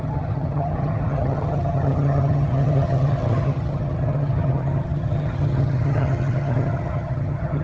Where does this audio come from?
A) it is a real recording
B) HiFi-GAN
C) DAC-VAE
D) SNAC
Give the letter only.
B